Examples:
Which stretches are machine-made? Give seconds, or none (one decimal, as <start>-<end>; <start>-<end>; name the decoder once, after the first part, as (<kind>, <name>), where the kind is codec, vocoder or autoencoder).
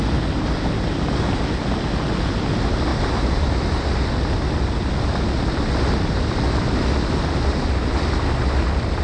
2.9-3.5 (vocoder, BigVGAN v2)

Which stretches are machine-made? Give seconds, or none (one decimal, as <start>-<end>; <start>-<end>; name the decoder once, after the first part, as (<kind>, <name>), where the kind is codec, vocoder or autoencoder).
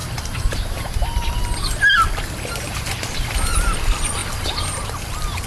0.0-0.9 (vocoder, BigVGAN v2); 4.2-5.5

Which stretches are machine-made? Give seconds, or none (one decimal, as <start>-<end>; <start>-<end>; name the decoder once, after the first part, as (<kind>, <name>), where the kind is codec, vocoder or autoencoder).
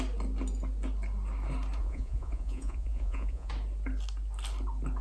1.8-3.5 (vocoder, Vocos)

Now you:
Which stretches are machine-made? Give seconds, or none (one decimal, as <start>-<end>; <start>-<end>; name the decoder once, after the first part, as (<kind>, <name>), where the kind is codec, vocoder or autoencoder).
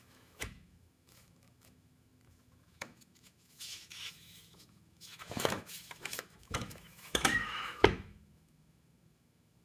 0.0-9.6 (autoencoder, DAC-VAE)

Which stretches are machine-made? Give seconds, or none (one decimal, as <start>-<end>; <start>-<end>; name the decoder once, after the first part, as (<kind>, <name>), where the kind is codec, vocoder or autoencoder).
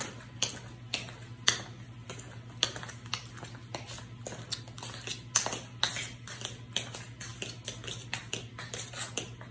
none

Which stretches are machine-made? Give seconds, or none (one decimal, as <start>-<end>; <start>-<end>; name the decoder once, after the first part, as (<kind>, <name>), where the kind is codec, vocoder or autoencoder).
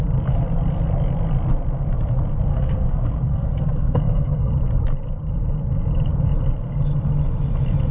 2.5-4.5 (codec, SNAC)